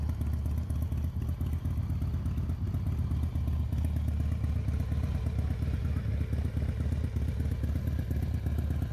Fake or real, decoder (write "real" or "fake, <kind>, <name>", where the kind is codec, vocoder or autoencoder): real